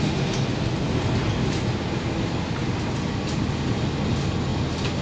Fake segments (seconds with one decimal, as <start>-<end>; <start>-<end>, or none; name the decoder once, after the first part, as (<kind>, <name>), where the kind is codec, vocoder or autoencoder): none